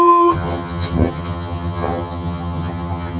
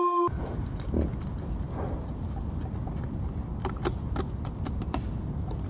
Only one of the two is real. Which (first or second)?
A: second